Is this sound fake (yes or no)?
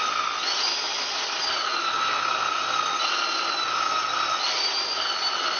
no